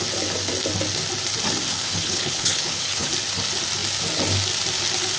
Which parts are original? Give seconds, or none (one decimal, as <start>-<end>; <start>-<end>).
0.0-1.7; 3.1-5.2